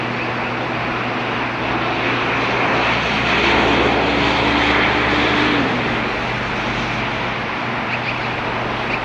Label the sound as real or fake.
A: real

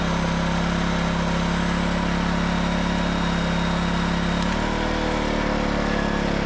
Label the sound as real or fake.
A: real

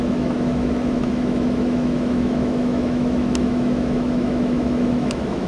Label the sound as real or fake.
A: fake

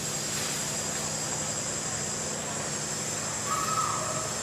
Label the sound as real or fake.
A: real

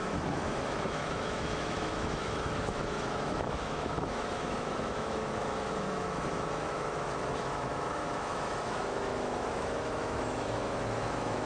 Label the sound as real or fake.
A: fake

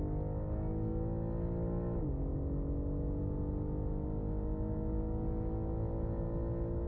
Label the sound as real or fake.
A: real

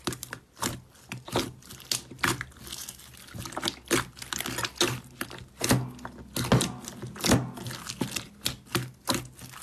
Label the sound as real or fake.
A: real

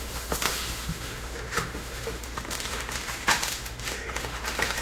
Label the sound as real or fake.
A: fake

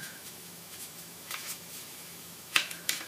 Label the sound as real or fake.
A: fake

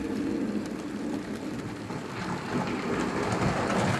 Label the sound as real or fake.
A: real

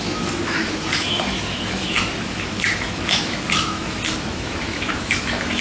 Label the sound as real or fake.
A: fake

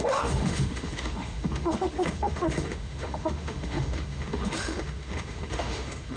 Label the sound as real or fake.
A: fake